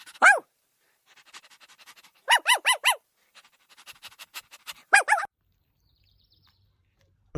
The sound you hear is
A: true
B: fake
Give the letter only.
B